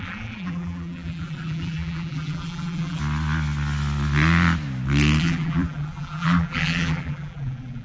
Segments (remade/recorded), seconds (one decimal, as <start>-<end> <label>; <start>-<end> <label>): 0.0-3.0 remade; 3.0-5.2 recorded; 5.2-7.8 remade